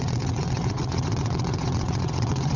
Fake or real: fake